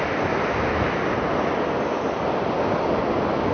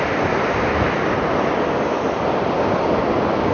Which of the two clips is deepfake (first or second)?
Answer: second